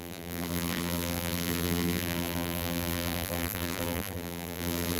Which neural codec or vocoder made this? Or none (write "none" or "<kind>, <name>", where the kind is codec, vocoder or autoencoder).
vocoder, BigVGAN v2